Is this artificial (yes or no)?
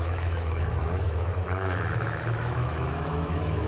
yes